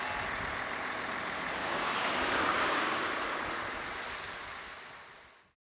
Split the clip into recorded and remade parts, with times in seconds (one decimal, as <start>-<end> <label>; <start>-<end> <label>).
0.0-1.6 recorded; 1.6-3.1 remade; 3.1-4.4 recorded; 4.4-4.9 remade; 4.9-5.6 recorded